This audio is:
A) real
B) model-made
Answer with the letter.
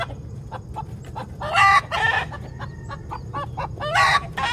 A